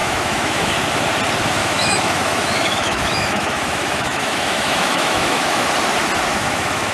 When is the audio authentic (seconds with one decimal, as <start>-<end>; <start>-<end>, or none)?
0.7-1.6; 5.7-6.3